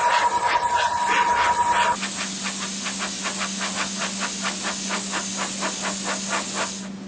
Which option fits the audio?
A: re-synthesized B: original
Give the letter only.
B